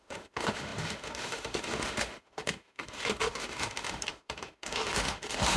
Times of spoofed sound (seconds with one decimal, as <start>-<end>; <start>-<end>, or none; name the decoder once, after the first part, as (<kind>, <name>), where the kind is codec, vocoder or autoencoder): 0.0-5.6 (autoencoder, DAC-VAE)